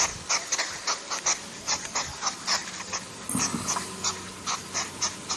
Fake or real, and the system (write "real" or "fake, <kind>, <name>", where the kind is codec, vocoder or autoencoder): real